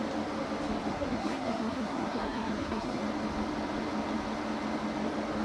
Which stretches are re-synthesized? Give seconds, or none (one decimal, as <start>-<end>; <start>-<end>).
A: 0.9-3.0